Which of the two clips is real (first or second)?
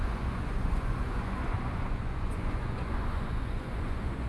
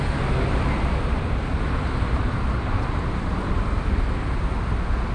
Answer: second